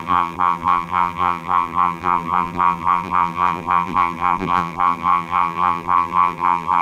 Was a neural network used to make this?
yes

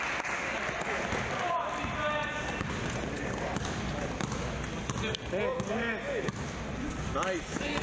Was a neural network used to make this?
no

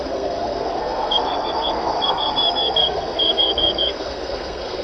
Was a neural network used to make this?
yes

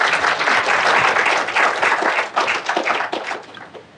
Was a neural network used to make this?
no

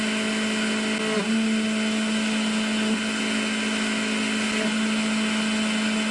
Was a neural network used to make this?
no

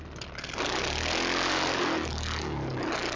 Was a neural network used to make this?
no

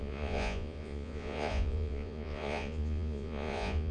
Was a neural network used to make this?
yes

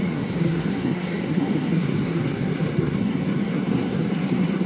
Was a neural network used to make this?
yes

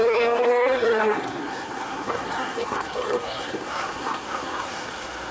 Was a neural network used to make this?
yes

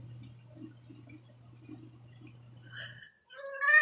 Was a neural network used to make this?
no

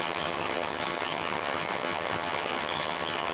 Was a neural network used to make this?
yes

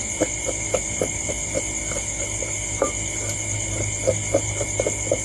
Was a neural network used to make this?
no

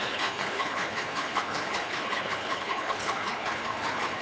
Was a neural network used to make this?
yes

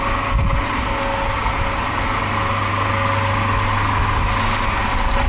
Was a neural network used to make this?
no